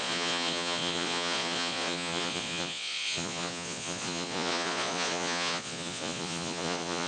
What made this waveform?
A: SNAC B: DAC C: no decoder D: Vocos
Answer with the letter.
D